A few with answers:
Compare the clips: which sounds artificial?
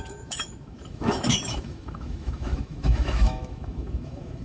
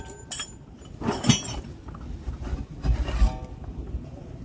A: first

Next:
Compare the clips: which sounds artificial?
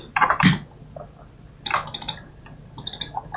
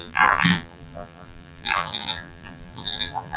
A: second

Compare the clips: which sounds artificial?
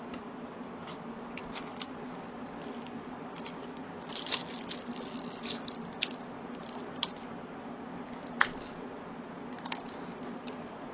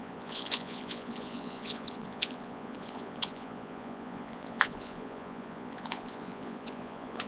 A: second